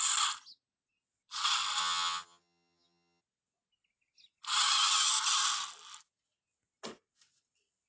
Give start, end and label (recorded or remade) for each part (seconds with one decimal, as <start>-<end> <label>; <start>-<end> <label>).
0.0-1.8 recorded; 1.8-3.2 remade; 3.2-7.9 recorded